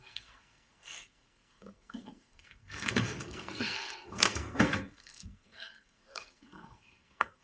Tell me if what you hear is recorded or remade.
remade